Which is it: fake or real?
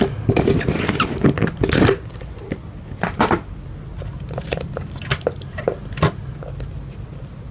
real